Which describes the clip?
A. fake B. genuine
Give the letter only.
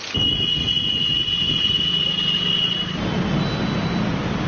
B